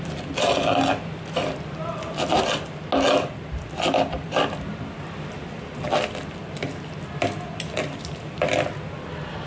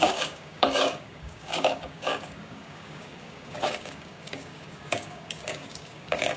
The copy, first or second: second